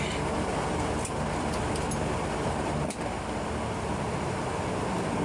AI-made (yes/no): yes